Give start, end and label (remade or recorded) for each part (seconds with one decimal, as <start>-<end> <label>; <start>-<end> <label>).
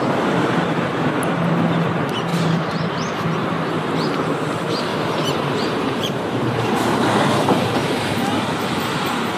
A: 0.0-2.3 recorded; 2.3-2.9 remade; 2.9-3.4 recorded; 3.4-4.5 remade; 4.5-4.9 recorded; 4.9-6.7 remade; 6.7-9.4 recorded